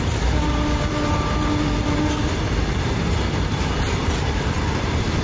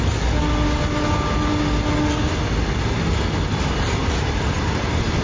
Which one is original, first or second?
second